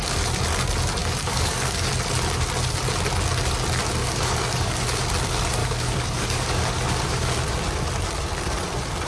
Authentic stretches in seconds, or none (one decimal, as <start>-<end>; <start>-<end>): 0.0-1.0; 1.9-4.0; 5.0-5.6; 7.3-9.1